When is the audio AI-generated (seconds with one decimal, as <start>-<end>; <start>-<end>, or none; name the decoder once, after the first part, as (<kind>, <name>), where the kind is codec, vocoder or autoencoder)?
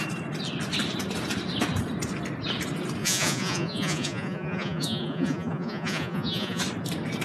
3.0-6.6 (vocoder, Vocos)